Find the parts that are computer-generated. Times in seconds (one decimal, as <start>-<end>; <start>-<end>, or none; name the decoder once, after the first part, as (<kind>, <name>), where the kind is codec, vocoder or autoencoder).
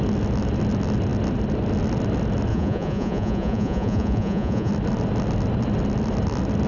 2.5-4.7 (vocoder, Vocos)